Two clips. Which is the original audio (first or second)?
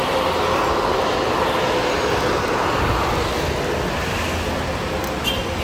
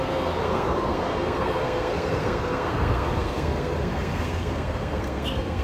first